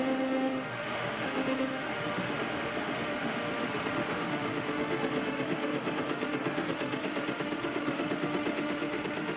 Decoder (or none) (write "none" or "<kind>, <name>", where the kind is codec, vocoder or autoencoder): autoencoder, DAC-VAE